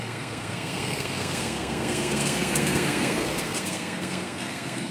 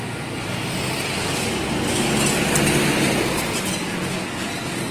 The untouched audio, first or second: second